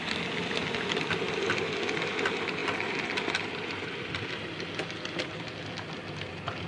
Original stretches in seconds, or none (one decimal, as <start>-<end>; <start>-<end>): 0.0-6.7